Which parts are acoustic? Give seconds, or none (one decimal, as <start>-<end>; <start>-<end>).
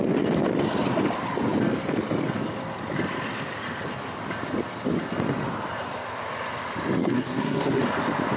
0.0-7.0; 7.8-8.4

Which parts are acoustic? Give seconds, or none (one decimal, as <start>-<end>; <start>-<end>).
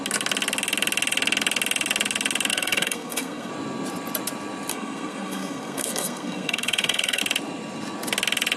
0.0-2.5; 3.5-4.7; 7.2-8.6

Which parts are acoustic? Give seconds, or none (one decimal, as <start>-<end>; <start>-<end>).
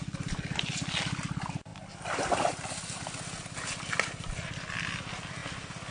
0.0-5.9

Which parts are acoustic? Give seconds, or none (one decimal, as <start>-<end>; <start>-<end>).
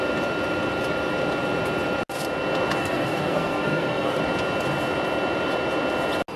0.0-2.8; 4.2-6.4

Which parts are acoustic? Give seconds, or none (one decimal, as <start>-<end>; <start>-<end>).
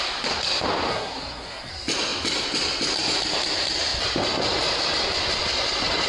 0.0-0.9; 1.7-6.1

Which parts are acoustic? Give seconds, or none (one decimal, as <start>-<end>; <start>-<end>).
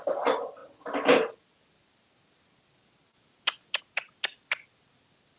0.0-5.4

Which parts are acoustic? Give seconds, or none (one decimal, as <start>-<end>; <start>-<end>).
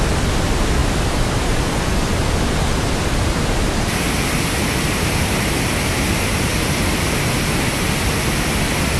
0.0-9.0